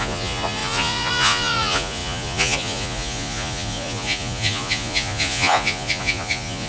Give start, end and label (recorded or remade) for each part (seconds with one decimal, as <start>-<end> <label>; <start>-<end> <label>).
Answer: 0.0-6.7 remade